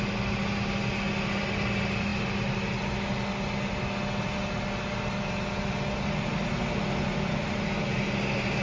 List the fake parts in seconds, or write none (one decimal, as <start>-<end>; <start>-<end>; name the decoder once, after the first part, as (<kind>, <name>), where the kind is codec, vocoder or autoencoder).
none